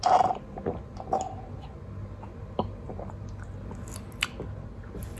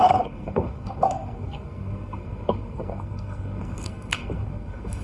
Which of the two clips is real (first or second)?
first